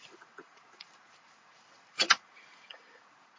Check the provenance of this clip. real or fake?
fake